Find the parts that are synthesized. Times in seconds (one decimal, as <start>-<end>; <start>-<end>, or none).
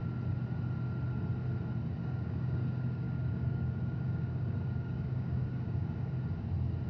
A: 2.0-6.1